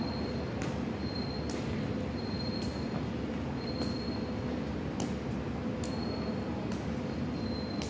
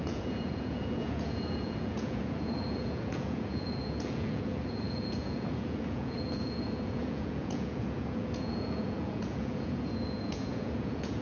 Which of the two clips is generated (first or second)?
second